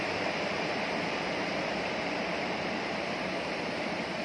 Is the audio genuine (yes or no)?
no